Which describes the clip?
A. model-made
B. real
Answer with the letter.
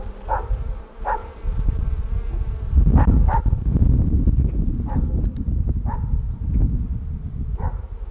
B